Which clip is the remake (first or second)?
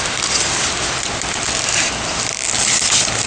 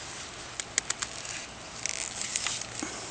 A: first